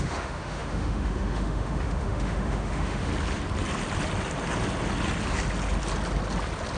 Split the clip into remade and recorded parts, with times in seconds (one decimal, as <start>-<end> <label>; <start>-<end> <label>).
0.0-3.1 remade; 3.1-6.8 recorded